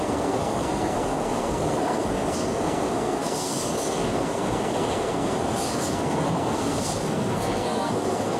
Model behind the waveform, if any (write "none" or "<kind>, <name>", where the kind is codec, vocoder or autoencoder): codec, SNAC